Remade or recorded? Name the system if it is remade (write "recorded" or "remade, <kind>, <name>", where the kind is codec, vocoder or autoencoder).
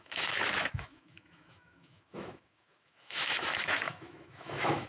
remade, autoencoder, DAC-VAE